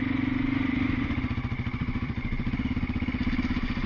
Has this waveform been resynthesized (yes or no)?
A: no